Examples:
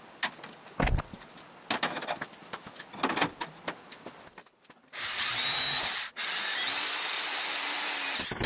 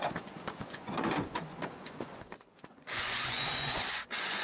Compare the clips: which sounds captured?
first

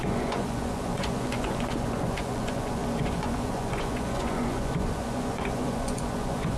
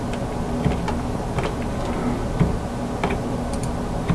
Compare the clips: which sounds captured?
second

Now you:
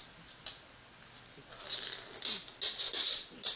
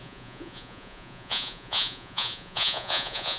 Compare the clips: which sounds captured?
first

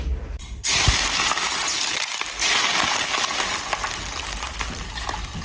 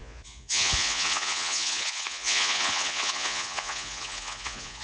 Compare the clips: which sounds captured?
first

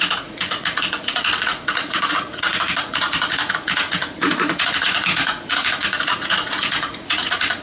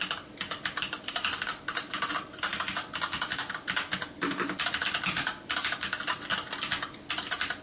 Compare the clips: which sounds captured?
second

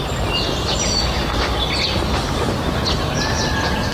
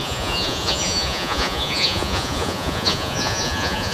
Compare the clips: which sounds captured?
first